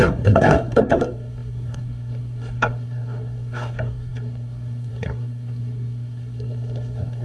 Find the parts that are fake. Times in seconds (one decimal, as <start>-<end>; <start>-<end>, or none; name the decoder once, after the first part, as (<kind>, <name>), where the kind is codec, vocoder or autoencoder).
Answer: 0.0-7.2 (codec, SNAC)